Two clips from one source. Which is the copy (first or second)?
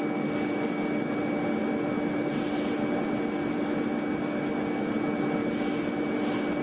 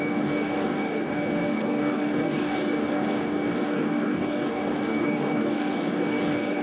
second